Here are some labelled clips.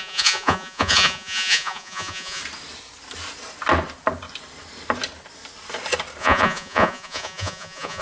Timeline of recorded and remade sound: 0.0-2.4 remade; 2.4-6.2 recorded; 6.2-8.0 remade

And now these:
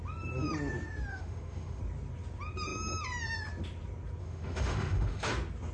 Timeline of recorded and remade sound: 0.0-1.1 recorded; 1.1-1.8 remade; 1.8-4.2 recorded; 4.2-5.3 remade; 5.3-5.7 recorded